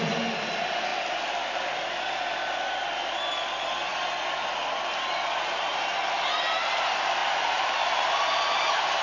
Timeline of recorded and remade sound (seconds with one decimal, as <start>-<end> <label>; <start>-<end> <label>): 0.0-9.0 recorded